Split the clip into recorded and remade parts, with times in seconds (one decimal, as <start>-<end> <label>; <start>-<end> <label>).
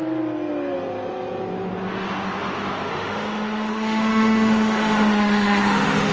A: 0.0-2.9 recorded; 2.9-6.1 remade